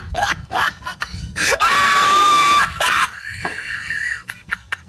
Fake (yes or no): yes